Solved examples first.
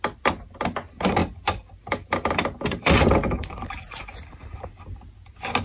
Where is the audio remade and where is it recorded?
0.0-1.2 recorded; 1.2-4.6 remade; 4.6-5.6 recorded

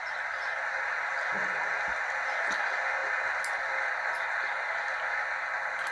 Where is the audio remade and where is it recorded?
0.0-1.0 remade; 1.0-5.9 recorded

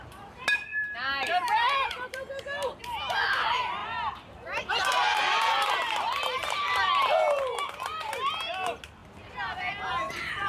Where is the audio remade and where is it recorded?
0.0-0.7 recorded; 0.7-2.8 remade; 2.8-3.8 recorded; 3.8-4.6 remade; 4.6-5.1 recorded; 5.1-6.6 remade; 6.6-10.5 recorded